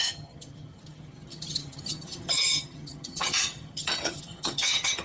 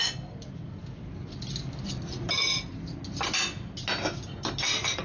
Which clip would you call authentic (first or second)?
second